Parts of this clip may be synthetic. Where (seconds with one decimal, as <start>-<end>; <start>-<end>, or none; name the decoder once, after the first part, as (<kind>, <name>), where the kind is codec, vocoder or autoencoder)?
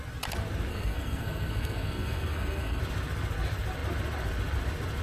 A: 0.7-2.8 (codec, SNAC)